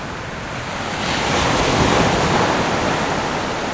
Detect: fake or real real